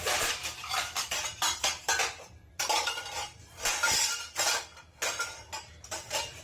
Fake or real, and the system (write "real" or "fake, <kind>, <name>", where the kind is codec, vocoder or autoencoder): fake, vocoder, BigVGAN v2